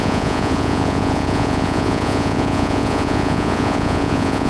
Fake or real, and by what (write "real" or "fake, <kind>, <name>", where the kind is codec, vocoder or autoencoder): fake, vocoder, Vocos